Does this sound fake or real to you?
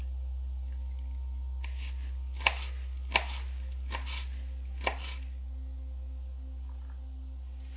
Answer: real